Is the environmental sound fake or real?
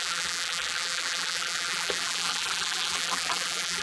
fake